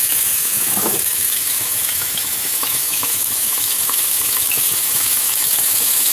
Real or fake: fake